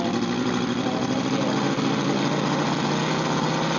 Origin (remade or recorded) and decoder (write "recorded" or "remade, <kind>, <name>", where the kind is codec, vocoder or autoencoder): recorded